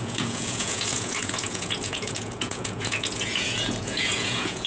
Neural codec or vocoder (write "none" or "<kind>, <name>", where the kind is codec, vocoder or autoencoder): vocoder, Vocos